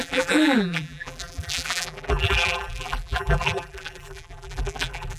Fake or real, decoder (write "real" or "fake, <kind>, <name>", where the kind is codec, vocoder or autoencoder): fake, vocoder, BigVGAN v2